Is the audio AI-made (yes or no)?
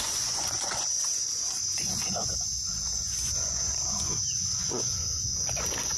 yes